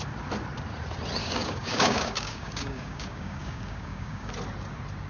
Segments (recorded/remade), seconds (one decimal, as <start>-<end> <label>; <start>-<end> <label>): 0.0-1.2 recorded; 1.2-4.3 remade; 4.3-5.1 recorded